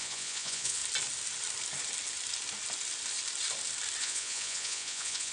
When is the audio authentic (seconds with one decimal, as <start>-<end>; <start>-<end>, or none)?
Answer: 0.8-4.0